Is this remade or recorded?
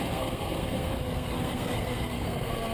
remade